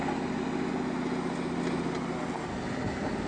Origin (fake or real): real